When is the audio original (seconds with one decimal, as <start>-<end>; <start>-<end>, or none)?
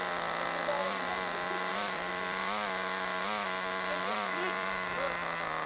0.0-1.7; 2.4-4.0; 4.7-5.7